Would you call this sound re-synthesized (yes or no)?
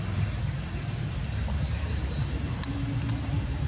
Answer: yes